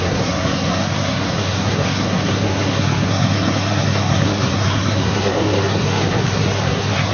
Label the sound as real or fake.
fake